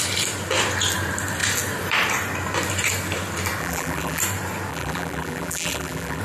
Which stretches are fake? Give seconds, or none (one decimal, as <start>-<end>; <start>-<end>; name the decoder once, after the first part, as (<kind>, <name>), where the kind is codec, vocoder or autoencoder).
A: 3.6-4.2 (vocoder, BigVGAN v2); 4.7-6.2